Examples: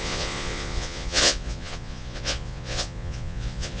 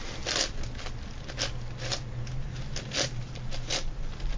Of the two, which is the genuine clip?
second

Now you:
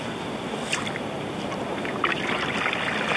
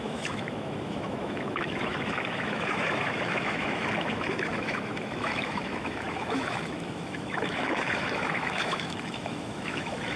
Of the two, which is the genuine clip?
first